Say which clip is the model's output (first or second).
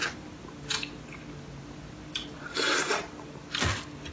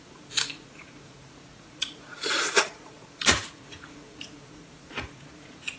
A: second